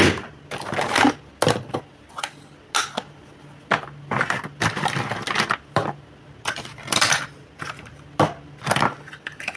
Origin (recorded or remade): recorded